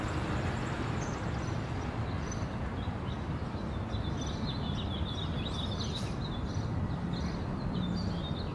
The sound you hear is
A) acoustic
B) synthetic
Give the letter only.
A